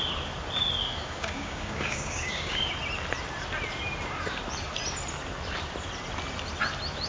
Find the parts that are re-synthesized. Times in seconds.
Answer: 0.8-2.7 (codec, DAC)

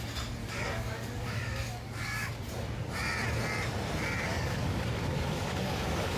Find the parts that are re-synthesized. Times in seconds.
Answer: 0.4-2.3 (codec, DAC); 4.3-6.2

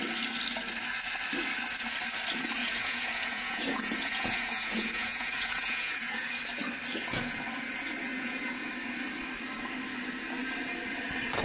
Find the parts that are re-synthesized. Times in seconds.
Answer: 2.6-6.4 (vocoder, Vocos); 6.9-7.4; 8.1-8.7

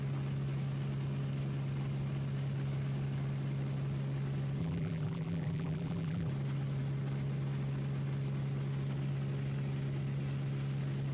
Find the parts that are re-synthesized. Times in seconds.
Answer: 4.6-6.3 (vocoder, BigVGAN v2)

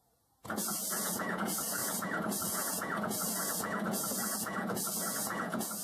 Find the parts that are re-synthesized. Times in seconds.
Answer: 0.0-5.8 (vocoder, Vocos)

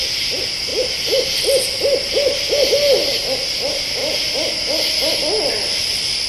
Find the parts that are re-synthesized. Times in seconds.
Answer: none

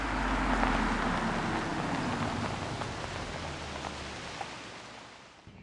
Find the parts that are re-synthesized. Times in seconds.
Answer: none